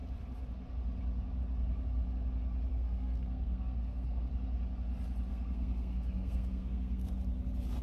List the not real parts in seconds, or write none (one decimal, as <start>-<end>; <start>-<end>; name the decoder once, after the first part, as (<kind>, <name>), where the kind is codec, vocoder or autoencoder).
2.7-4.3 (codec, SNAC); 5.3-7.1